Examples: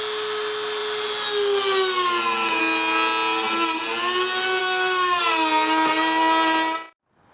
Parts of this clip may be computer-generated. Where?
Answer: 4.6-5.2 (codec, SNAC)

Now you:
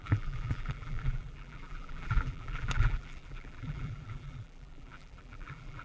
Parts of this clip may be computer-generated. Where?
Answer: 0.0-5.8 (vocoder, BigVGAN v2)

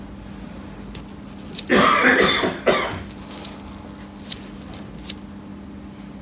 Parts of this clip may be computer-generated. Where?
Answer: none

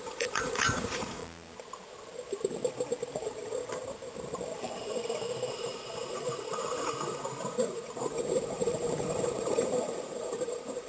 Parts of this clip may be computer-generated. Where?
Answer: 0.0-1.2 (vocoder, Vocos); 5.5-10.9

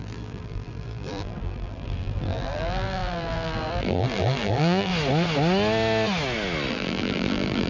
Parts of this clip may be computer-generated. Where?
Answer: 0.0-4.9 (vocoder, BigVGAN v2); 6.7-7.7

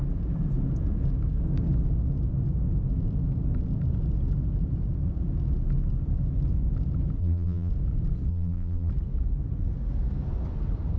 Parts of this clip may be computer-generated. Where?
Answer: 7.2-7.7 (vocoder, BigVGAN v2); 8.3-8.9

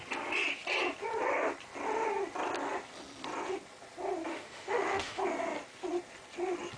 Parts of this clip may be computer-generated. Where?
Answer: 4.3-5.2 (autoencoder, DAC-VAE)

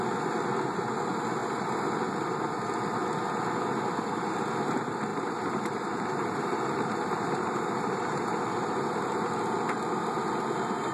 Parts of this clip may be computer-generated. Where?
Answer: 5.1-8.3 (vocoder, BigVGAN v2)